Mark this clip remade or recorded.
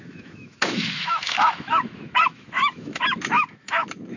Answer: remade